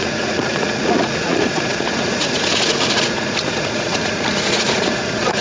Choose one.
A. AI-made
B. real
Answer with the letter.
A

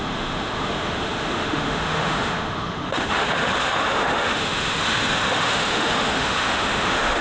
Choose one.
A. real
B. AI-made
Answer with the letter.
B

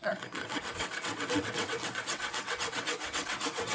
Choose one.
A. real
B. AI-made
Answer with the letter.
B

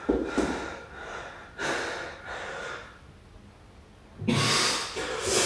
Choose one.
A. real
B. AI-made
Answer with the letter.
A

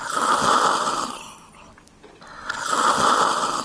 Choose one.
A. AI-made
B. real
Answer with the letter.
B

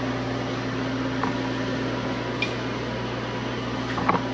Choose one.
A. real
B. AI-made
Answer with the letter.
A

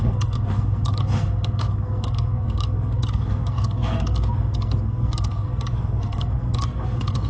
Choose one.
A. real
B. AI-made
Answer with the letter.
B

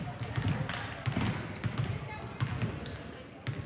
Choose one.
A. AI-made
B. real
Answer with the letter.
B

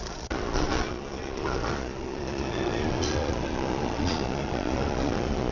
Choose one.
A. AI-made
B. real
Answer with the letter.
A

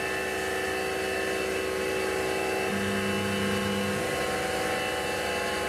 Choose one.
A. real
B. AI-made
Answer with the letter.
A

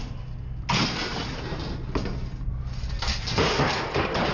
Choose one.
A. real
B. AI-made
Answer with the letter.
A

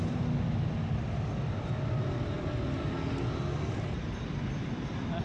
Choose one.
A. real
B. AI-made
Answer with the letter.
A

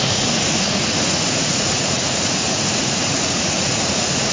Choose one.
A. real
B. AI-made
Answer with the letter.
B